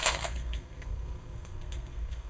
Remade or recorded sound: remade